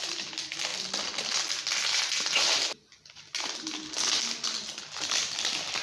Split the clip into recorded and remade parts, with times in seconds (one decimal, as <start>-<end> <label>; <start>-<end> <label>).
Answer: 0.0-5.8 recorded

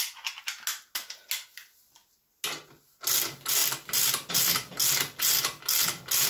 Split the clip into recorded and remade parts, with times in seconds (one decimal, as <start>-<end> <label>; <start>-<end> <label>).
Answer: 0.0-6.3 recorded

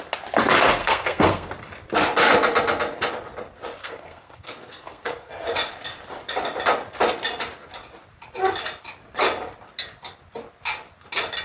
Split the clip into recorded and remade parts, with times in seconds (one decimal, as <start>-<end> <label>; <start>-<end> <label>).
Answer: 0.0-0.8 recorded; 0.8-1.5 remade; 1.5-3.8 recorded; 3.8-5.3 remade; 5.3-11.4 recorded

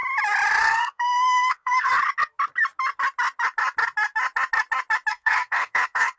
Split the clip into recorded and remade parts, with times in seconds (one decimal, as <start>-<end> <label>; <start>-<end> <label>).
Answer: 0.0-0.6 recorded; 0.6-1.9 remade; 1.9-5.1 recorded; 5.1-6.2 remade